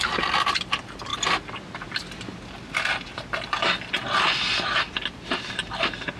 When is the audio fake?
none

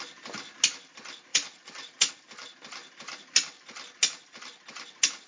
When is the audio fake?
1.3-2.1

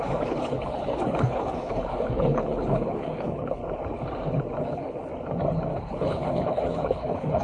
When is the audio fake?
0.0-3.6; 4.6-5.1; 5.7-7.4

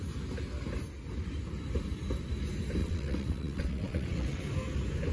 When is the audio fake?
2.8-4.4

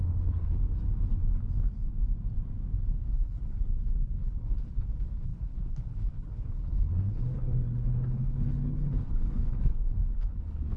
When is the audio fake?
0.0-0.6; 2.8-10.8

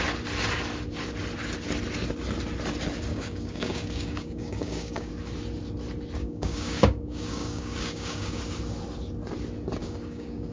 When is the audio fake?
3.1-5.1; 6.2-8.4; 9.8-10.5

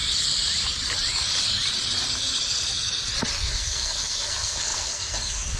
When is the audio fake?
3.4-5.6

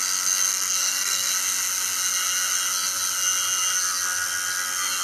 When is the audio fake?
0.5-1.3